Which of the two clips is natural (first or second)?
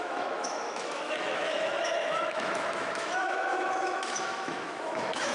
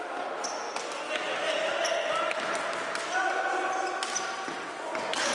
second